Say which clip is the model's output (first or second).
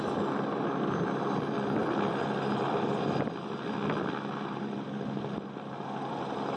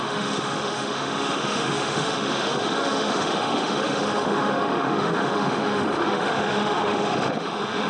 second